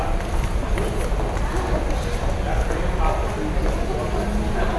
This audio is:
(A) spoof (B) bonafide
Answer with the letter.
B